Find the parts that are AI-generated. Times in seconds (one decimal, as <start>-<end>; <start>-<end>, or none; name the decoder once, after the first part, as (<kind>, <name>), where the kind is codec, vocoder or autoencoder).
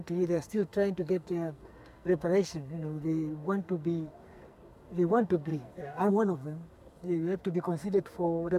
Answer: 0.0-8.6 (codec, SNAC)